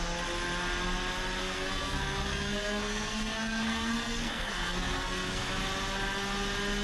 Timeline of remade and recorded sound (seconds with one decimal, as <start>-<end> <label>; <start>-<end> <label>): 0.0-1.4 recorded; 1.4-5.5 remade; 5.5-6.8 recorded